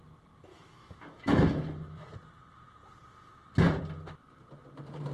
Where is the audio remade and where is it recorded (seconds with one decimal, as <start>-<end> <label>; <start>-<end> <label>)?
0.0-0.5 recorded; 0.5-2.0 remade; 2.0-5.1 recorded